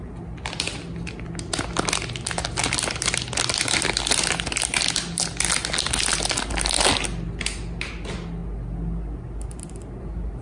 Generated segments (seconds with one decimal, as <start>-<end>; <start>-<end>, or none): none